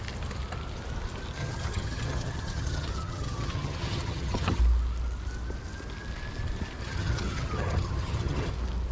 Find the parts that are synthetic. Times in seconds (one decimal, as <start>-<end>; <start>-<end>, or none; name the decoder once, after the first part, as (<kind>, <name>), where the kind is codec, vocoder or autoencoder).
1.4-4.6 (vocoder, HiFi-GAN); 6.8-8.5